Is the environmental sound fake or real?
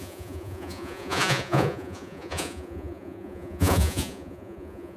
fake